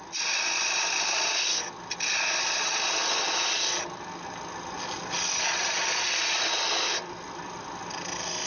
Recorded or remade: recorded